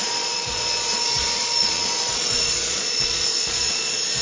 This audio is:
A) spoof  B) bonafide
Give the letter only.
A